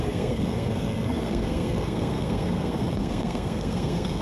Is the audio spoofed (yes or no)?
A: yes